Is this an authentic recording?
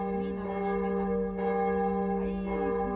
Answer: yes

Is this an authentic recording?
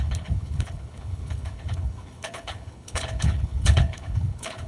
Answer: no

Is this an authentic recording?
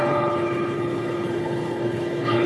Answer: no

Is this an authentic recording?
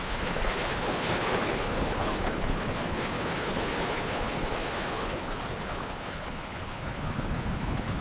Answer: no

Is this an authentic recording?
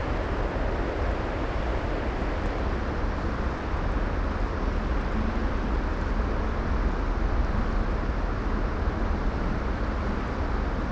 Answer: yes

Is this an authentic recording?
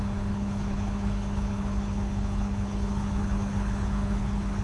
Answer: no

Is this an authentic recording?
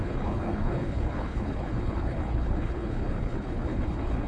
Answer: no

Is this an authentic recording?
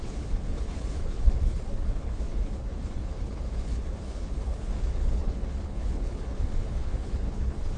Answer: no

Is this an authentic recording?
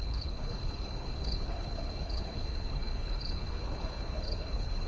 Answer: no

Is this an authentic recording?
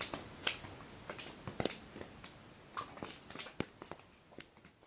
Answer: yes